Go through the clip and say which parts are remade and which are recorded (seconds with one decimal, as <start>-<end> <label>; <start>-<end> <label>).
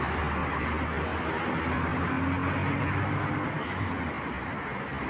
0.0-5.1 recorded